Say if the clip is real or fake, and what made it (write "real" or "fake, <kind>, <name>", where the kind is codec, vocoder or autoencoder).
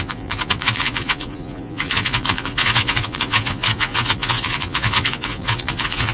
fake, vocoder, Vocos